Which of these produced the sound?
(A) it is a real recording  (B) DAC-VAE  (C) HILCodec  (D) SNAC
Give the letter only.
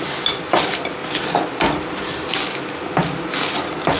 A